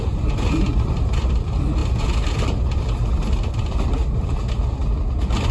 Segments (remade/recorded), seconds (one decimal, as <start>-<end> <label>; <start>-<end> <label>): 0.0-5.5 recorded